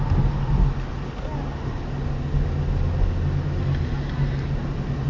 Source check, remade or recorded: recorded